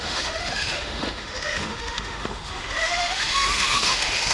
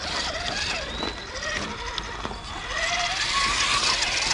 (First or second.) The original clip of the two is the second